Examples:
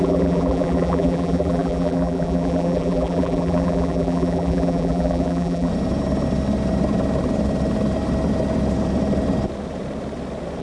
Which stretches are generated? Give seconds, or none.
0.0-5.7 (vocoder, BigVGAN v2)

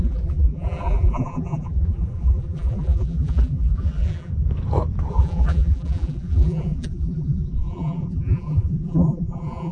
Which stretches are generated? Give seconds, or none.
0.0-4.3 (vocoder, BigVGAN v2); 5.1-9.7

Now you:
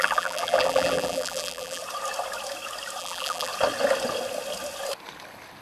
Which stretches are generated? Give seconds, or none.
0.0-1.8 (vocoder, BigVGAN v2); 3.0-3.5